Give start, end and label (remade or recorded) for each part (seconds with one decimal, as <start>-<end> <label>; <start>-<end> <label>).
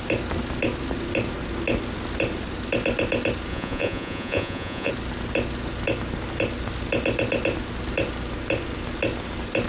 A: 0.0-3.5 recorded; 3.5-4.9 remade; 4.9-9.7 recorded